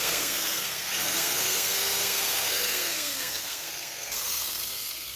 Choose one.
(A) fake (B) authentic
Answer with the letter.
A